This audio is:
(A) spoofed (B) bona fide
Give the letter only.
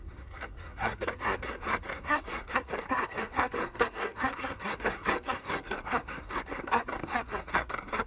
A